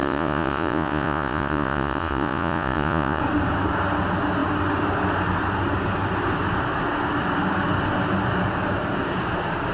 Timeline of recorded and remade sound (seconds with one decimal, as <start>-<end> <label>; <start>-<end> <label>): 0.0-3.2 remade; 3.2-9.7 recorded